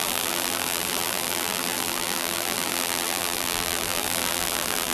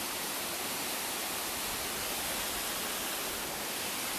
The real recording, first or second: second